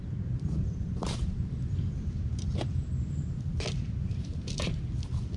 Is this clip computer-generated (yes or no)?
no